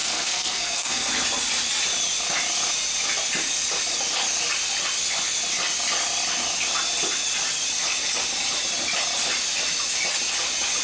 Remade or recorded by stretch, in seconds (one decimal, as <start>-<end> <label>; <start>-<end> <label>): 0.0-1.1 remade; 1.1-10.8 recorded